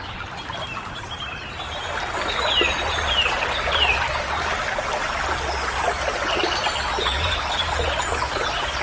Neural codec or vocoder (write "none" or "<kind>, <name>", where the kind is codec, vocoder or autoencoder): none